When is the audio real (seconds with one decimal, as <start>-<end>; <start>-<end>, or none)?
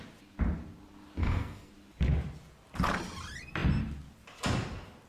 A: 0.0-1.2; 1.7-5.1